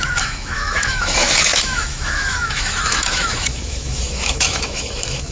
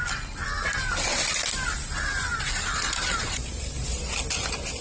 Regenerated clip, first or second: first